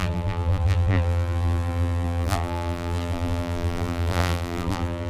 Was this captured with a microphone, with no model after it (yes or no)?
no